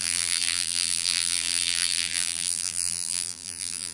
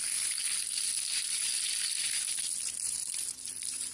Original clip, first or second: second